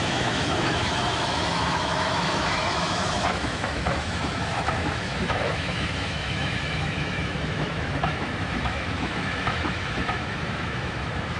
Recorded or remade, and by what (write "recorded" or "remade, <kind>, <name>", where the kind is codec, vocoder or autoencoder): remade, autoencoder, DAC-VAE